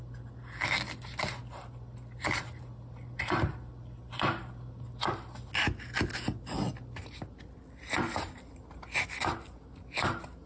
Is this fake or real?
real